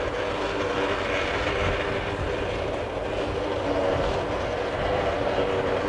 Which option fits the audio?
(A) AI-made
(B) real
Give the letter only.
B